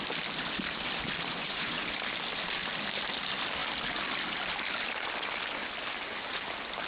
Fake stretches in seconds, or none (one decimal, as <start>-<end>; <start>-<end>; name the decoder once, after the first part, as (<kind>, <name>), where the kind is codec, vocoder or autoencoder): 1.3-1.9 (vocoder, Vocos)